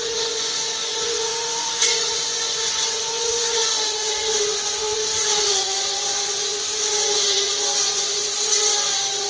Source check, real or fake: fake